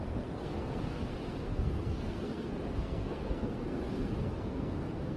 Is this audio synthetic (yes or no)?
yes